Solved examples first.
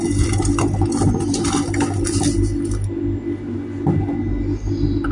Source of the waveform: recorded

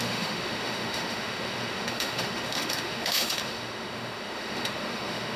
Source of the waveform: remade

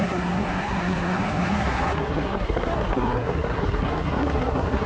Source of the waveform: remade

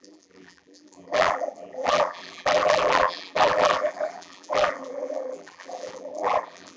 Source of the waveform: remade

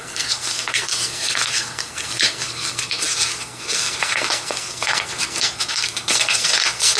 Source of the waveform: remade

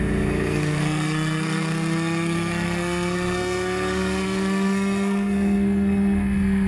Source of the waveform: remade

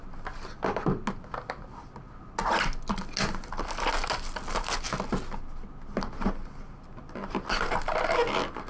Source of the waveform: recorded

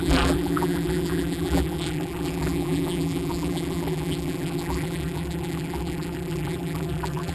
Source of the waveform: remade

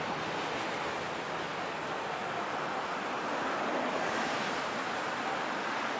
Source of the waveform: recorded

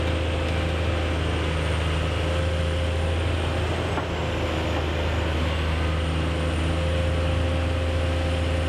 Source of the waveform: recorded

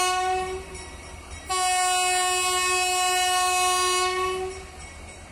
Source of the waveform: recorded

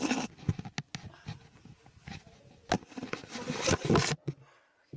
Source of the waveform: recorded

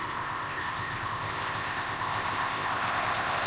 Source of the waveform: remade